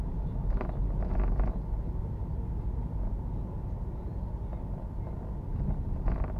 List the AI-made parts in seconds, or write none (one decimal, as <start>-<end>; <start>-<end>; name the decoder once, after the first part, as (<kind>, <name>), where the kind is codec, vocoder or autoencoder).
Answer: none